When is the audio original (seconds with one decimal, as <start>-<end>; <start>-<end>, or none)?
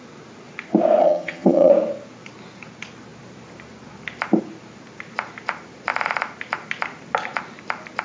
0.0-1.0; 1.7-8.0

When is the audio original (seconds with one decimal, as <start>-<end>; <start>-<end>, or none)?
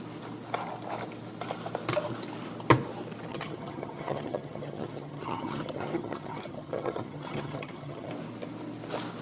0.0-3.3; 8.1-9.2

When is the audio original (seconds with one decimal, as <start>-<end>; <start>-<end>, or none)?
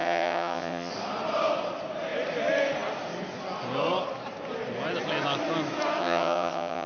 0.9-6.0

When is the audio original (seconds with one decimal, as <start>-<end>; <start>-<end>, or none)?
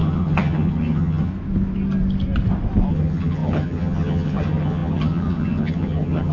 1.3-2.9